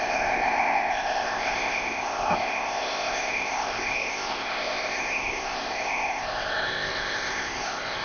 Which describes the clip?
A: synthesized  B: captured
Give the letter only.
A